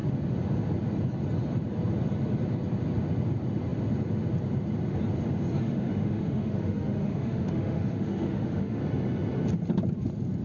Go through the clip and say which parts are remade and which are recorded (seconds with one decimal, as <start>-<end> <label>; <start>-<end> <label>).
0.0-5.6 recorded; 5.6-8.8 remade; 8.8-10.4 recorded